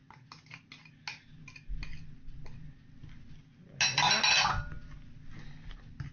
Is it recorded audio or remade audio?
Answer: recorded